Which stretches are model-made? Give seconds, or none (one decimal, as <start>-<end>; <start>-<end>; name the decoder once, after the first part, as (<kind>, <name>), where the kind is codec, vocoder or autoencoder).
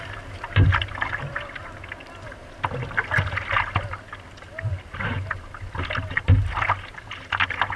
none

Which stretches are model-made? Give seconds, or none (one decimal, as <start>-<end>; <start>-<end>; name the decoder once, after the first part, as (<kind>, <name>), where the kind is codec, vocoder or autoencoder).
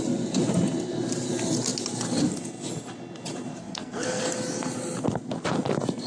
3.6-4.2 (codec, SNAC)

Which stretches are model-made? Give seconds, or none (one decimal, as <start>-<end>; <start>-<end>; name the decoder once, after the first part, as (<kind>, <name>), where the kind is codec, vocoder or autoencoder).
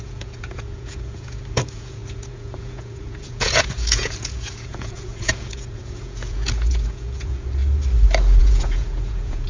0.0-7.6 (vocoder, Vocos); 8.4-9.5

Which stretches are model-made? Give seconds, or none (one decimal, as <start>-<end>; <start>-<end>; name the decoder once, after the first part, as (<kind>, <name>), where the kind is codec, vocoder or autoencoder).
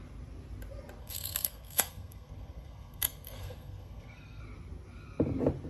1.0-4.4 (codec, SNAC)